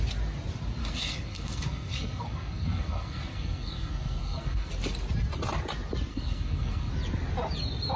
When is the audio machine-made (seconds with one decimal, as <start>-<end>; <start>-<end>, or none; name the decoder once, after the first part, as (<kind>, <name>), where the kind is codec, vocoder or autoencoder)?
0.8-4.7 (codec, SNAC); 6.1-6.9